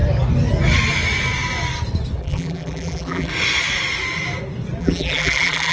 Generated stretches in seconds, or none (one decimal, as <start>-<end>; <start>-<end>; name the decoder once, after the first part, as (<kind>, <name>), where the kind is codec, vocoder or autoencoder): 2.2-3.3 (vocoder, BigVGAN v2); 4.8-5.7